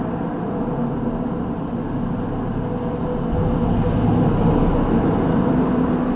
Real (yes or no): yes